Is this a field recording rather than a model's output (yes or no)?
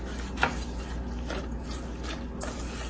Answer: yes